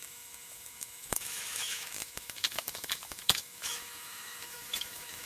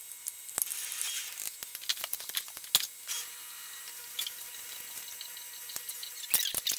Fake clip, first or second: first